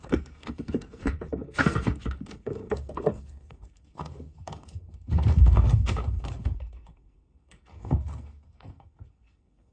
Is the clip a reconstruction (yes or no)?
yes